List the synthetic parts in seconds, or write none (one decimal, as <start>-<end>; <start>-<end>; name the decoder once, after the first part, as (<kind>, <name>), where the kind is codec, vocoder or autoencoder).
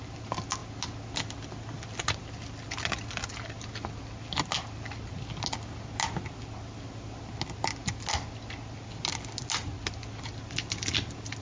none